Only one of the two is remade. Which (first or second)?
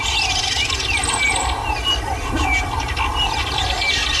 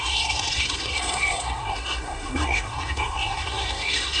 second